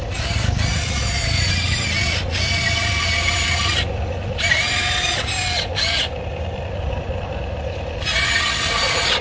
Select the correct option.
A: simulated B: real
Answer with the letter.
B